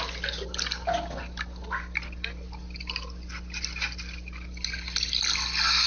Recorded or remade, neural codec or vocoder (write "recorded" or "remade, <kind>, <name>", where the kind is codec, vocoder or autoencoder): recorded